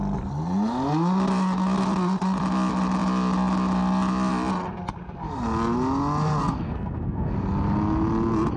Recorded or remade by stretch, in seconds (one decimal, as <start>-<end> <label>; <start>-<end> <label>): 0.0-6.4 recorded; 6.4-7.3 remade; 7.3-8.6 recorded